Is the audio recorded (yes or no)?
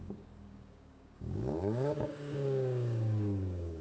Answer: no